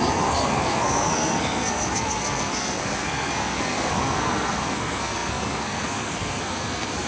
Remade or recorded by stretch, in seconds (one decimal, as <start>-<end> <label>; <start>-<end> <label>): 0.0-7.1 remade